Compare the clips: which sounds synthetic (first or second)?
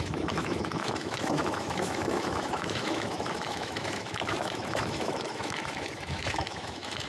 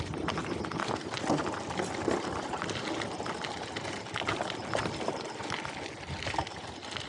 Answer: first